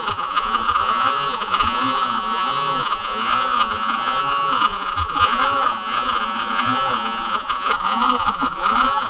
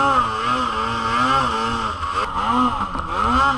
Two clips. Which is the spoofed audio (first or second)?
first